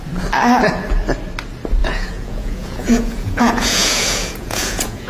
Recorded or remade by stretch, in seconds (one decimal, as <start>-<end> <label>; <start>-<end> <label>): 0.0-1.8 recorded; 1.8-5.1 remade